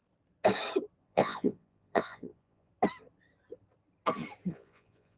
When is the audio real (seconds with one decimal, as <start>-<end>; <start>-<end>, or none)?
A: 0.0-1.0; 2.7-4.5